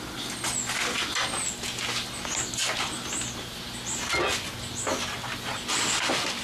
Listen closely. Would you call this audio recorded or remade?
recorded